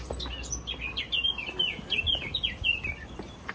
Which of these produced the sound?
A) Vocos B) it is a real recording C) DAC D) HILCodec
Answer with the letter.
B